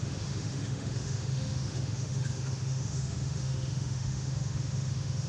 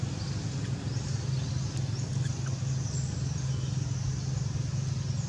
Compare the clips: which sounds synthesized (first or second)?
first